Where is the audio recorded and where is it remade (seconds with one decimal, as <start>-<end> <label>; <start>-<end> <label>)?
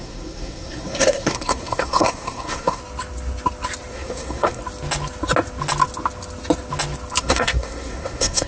0.0-2.8 remade; 2.8-3.9 recorded; 3.9-4.6 remade; 4.6-7.2 recorded; 7.2-8.5 remade